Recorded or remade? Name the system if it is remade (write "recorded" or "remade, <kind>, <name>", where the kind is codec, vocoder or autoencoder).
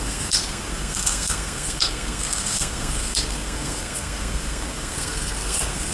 remade, codec, SNAC